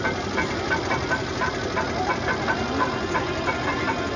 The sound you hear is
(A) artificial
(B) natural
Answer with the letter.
B